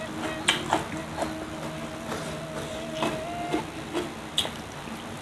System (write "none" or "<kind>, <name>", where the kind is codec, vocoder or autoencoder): none